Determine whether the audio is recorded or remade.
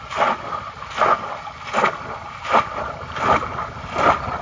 recorded